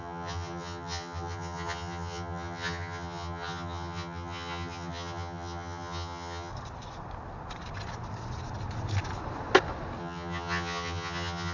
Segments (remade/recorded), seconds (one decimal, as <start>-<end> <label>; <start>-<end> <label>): 0.0-6.5 remade; 6.5-10.0 recorded; 10.0-11.5 remade